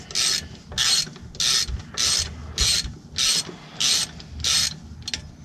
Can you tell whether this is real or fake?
real